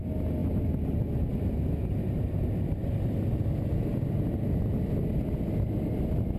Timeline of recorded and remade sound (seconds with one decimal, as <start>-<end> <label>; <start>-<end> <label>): 0.0-6.4 recorded